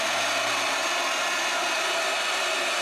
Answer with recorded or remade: recorded